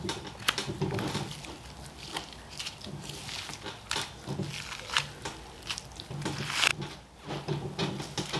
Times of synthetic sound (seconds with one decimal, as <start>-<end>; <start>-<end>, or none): none